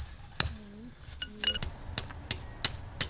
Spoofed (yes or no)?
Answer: no